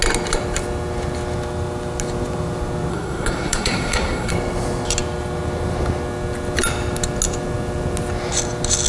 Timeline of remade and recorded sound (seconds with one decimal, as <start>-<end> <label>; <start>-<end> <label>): 0.0-2.9 recorded; 2.9-4.3 remade; 4.3-8.9 recorded